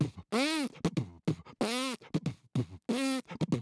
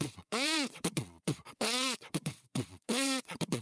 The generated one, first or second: second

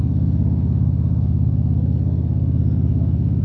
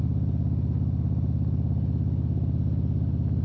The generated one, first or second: first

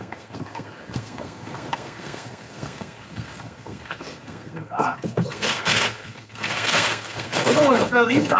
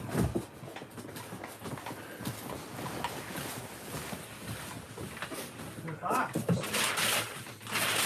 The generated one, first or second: first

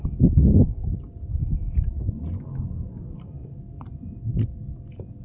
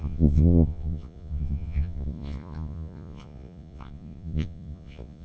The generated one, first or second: second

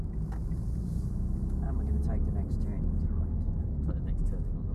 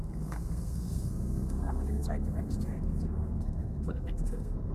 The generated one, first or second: second